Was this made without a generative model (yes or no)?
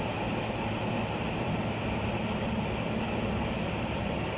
yes